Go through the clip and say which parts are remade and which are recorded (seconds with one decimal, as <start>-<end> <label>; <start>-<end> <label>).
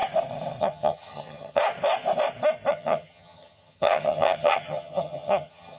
0.0-0.6 recorded; 0.6-1.6 remade; 1.6-2.7 recorded; 2.7-5.8 remade